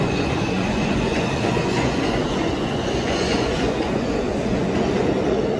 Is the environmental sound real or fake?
fake